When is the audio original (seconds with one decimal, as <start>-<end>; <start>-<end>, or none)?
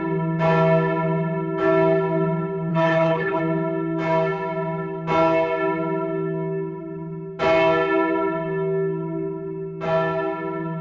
0.0-2.7; 3.4-10.8